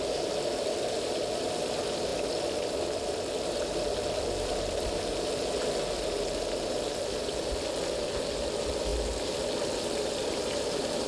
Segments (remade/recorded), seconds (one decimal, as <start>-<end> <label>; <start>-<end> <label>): 0.0-11.1 recorded